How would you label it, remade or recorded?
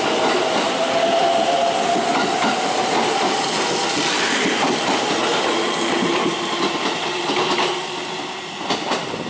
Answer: recorded